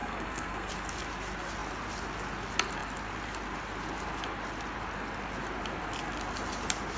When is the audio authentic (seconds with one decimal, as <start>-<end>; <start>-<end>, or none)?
0.7-7.0